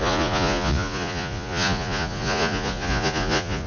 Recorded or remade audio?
remade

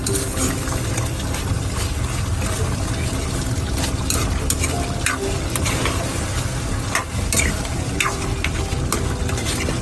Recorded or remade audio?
recorded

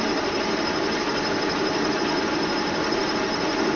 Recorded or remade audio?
recorded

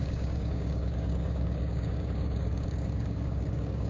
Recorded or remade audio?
remade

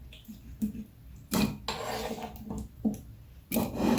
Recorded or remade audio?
recorded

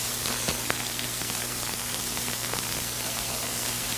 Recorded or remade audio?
remade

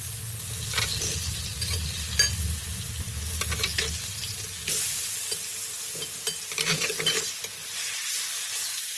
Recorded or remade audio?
recorded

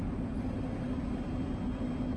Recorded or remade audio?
recorded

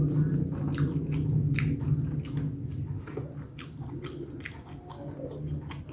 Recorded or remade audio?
recorded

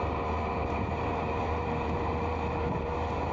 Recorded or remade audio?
remade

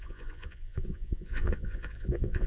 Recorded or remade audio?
remade